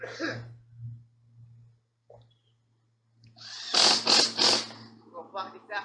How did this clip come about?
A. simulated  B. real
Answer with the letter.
B